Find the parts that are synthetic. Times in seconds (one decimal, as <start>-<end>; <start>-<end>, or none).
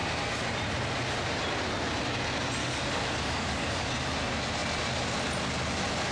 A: 2.6-3.9